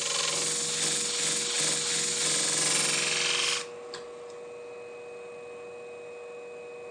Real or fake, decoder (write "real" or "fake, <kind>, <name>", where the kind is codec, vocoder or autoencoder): real